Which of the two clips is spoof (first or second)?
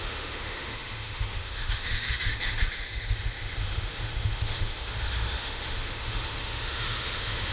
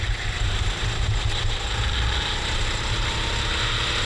first